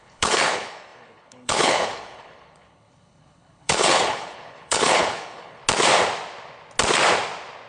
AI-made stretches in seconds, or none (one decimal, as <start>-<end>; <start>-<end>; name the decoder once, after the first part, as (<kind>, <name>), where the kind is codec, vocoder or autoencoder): 0.0-5.6 (codec, HILCodec)